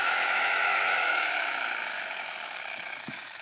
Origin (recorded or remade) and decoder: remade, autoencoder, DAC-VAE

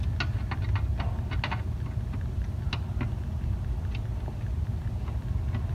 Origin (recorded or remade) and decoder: recorded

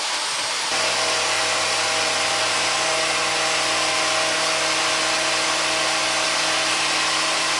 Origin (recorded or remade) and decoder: recorded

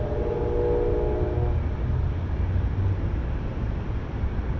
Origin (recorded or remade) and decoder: recorded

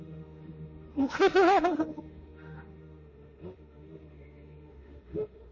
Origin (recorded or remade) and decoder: remade, autoencoder, DAC-VAE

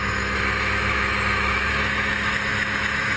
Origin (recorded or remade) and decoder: remade, autoencoder, DAC-VAE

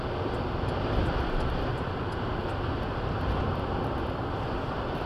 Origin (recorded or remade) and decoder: recorded